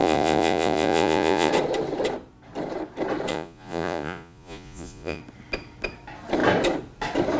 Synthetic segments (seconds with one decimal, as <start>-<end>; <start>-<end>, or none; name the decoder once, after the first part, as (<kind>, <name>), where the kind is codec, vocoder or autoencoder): 0.0-1.5 (vocoder, Vocos); 3.3-5.2